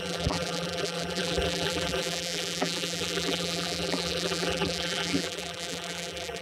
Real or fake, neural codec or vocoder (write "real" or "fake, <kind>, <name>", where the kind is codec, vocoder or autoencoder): fake, vocoder, BigVGAN v2